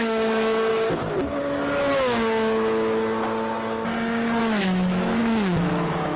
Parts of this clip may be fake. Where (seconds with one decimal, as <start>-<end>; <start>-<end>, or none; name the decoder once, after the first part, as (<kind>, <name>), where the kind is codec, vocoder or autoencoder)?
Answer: 0.0-0.7 (autoencoder, DAC-VAE); 4.4-6.2